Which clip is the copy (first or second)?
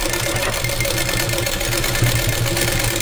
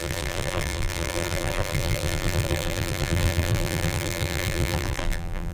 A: second